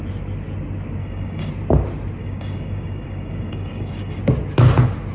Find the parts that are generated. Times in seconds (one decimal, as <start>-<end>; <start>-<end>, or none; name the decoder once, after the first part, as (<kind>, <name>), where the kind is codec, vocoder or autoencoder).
1.0-1.5 (codec, DAC); 2.2-4.2